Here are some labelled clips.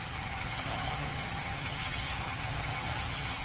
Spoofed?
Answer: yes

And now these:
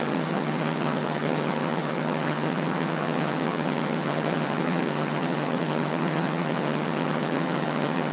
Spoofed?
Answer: yes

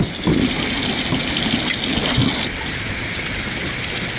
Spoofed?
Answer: no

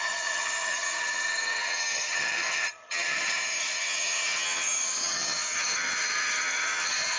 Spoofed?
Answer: yes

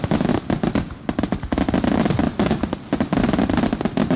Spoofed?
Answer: no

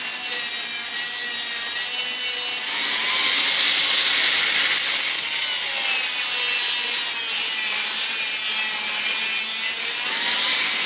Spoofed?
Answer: no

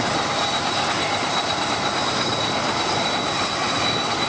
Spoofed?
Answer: no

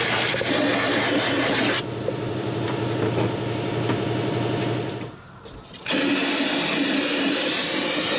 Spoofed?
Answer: no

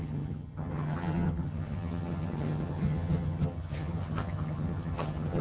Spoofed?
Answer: yes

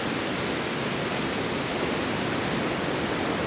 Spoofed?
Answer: no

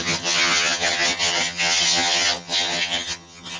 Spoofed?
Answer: yes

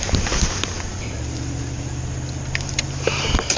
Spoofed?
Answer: no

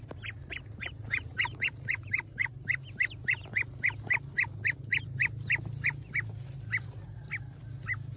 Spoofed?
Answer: no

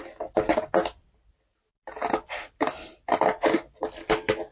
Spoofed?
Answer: no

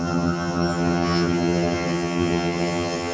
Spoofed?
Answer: yes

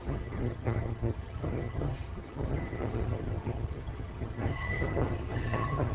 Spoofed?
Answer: yes